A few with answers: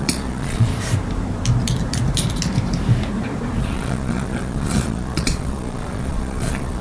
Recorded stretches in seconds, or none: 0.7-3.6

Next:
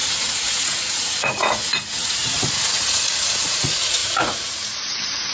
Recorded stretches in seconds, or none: none

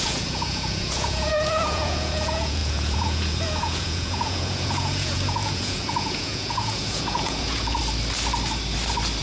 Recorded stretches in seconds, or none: 7.8-9.2

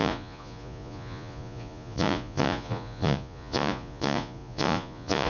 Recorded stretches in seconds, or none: none

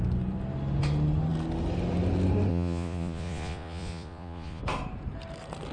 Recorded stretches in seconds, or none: 0.0-2.5; 4.6-5.7

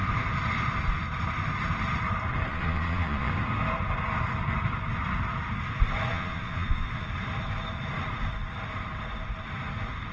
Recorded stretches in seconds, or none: 0.0-2.5; 3.3-6.1; 7.1-10.1

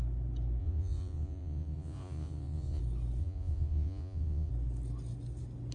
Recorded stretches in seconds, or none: 0.0-0.6; 2.8-3.2; 4.5-5.7

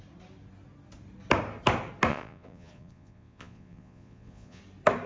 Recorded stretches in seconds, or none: 0.0-2.1; 4.6-5.1